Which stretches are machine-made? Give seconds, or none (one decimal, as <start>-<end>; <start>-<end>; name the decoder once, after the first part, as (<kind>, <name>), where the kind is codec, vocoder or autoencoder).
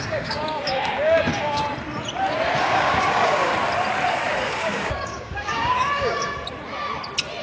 0.0-1.6 (codec, DAC); 2.6-3.5; 4.1-6.2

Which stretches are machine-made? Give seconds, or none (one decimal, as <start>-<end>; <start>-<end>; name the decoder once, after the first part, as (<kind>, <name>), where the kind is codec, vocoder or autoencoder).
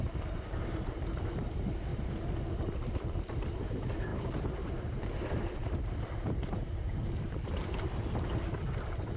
0.0-4.1 (vocoder, BigVGAN v2); 5.0-9.2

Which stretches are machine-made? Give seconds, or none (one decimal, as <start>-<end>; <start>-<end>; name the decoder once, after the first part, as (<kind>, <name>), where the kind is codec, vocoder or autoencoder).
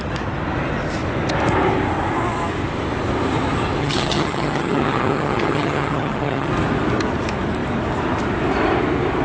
3.8-6.5 (vocoder, HiFi-GAN)